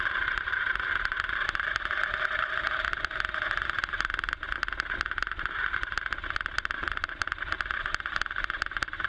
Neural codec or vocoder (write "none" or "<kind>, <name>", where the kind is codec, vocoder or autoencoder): none